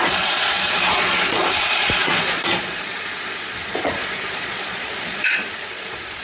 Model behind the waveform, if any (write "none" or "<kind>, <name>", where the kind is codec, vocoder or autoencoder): vocoder, Vocos